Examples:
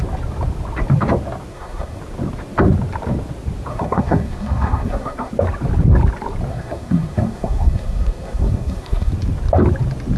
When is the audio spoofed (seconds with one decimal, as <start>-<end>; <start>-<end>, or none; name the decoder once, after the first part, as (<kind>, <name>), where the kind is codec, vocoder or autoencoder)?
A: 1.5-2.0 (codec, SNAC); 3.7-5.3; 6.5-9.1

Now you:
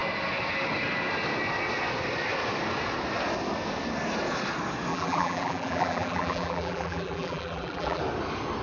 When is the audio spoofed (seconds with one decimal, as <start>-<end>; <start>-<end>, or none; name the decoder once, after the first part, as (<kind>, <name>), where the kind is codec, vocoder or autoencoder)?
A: 4.9-8.0 (vocoder, BigVGAN v2)

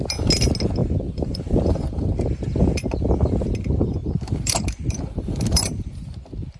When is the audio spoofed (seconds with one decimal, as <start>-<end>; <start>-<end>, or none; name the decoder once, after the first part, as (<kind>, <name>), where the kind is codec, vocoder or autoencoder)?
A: 0.8-2.1 (vocoder, BigVGAN v2); 4.0-5.9

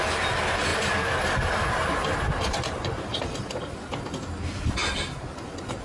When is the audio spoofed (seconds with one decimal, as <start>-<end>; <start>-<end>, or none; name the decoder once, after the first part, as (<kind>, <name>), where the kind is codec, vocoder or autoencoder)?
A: 0.7-1.7 (vocoder, BigVGAN v2)